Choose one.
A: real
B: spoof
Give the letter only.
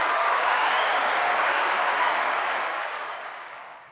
B